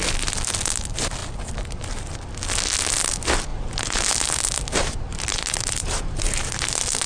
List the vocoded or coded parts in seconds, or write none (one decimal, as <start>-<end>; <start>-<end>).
3.5-4.1; 5.1-6.6